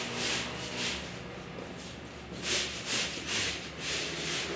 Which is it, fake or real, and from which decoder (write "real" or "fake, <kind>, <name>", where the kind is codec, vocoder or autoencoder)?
fake, vocoder, BigVGAN v2